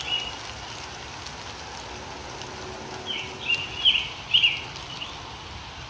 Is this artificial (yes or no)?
no